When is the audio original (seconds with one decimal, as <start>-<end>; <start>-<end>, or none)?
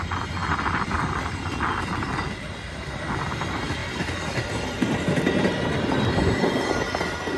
0.0-7.4